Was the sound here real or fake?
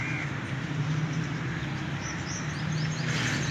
real